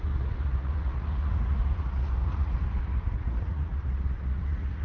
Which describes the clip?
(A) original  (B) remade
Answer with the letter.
B